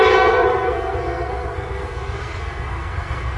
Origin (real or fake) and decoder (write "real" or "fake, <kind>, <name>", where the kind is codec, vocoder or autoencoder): fake, codec, SNAC